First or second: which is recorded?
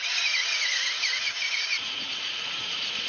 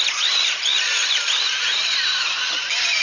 second